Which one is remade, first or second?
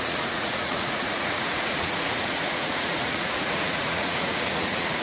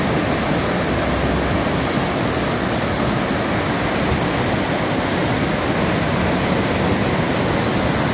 first